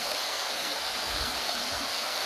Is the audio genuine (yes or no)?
no